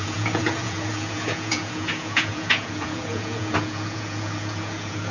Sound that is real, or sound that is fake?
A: fake